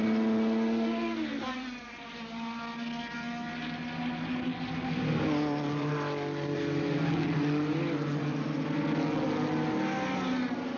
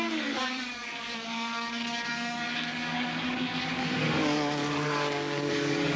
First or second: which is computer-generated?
second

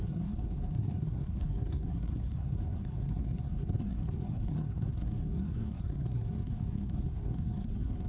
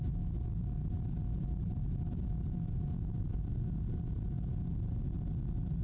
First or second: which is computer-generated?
first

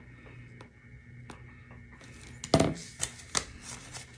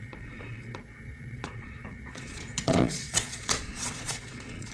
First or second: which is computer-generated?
second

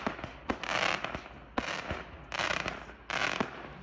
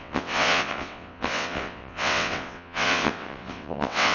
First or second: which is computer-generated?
second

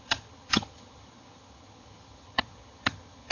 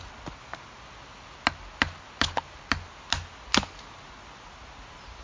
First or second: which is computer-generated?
first